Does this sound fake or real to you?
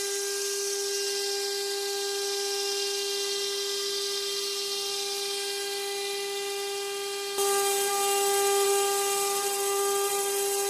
real